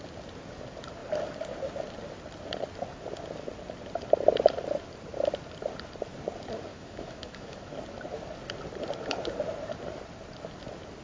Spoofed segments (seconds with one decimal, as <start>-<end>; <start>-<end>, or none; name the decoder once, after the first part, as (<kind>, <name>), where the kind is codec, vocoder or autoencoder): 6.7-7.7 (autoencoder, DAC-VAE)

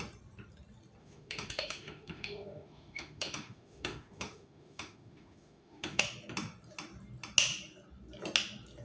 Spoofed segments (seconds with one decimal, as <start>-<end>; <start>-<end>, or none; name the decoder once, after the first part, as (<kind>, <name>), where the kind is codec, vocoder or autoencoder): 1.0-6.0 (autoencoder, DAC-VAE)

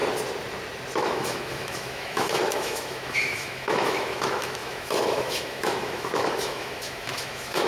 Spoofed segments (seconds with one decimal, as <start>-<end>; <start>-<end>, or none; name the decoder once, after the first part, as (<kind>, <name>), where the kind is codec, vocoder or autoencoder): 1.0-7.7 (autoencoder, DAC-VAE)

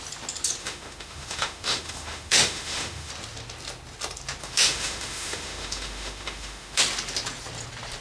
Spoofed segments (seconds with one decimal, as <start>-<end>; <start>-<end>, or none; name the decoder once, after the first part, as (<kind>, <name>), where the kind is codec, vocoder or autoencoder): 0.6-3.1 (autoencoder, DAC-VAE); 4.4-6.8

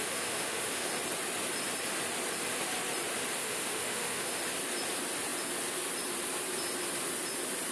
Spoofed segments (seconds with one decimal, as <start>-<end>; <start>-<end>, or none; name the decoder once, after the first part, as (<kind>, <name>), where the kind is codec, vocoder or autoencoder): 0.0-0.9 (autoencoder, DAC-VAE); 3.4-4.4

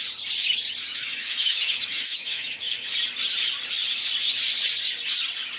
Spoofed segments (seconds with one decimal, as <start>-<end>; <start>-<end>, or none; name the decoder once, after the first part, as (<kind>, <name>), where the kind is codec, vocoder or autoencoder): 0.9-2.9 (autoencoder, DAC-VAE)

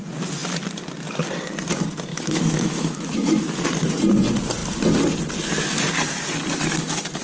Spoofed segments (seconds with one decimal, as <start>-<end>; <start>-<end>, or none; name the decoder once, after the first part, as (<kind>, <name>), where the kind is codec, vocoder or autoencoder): 2.1-3.5 (autoencoder, DAC-VAE)